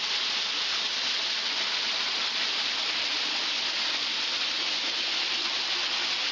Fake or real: real